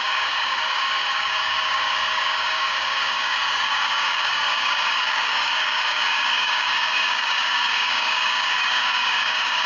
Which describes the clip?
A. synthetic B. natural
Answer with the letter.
A